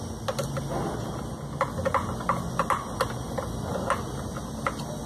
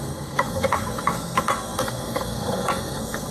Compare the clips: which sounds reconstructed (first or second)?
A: second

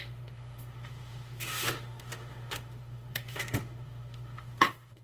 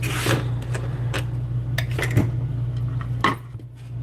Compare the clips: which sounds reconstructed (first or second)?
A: first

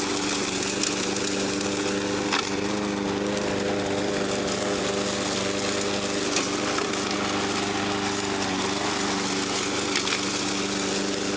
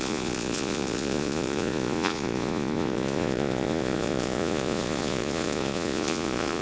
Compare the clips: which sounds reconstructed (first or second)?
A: second